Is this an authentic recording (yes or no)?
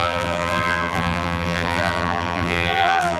no